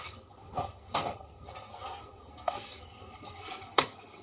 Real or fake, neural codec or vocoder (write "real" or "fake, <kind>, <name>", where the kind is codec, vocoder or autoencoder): fake, codec, SNAC